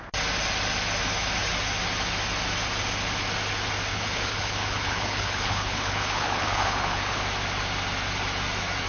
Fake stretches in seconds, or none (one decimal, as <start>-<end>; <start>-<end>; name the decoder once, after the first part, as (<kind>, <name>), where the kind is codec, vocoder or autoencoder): 3.9-7.2 (codec, HILCodec)